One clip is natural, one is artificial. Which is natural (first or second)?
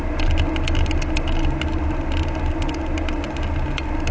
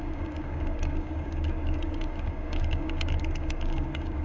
first